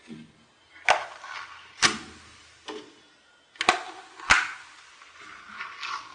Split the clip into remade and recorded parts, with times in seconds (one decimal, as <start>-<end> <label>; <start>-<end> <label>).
0.0-6.1 recorded